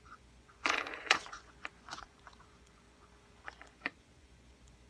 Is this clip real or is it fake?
fake